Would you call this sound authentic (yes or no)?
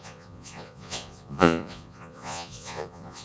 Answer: no